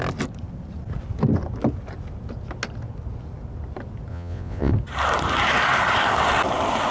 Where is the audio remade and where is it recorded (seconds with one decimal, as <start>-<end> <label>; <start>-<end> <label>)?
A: 0.0-4.1 recorded; 4.1-4.7 remade; 4.7-6.9 recorded